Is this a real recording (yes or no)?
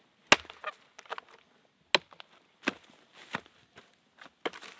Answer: yes